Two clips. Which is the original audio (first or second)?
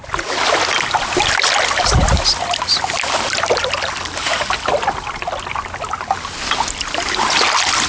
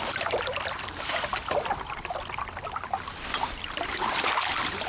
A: first